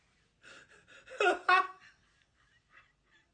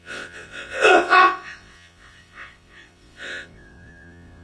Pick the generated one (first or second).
second